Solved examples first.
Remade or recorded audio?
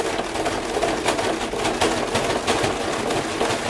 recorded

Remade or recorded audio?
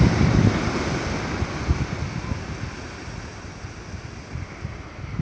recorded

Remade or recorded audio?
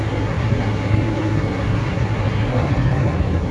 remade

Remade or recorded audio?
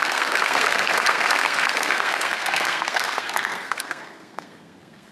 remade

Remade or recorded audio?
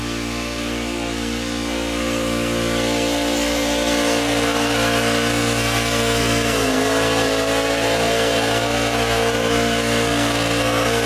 remade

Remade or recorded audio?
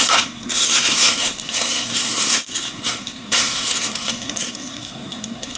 remade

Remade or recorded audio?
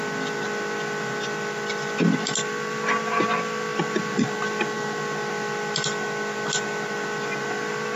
recorded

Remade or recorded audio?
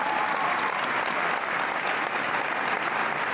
recorded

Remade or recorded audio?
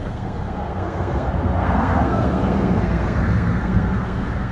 remade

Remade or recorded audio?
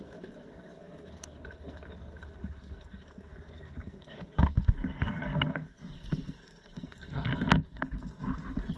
remade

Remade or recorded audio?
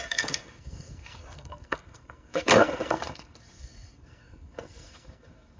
remade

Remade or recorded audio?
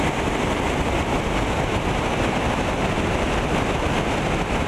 recorded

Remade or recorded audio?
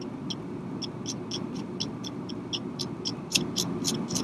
recorded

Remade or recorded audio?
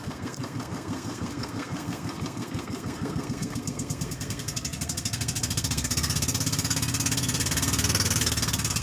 remade